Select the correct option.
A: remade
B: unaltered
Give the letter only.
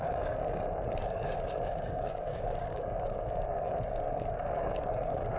A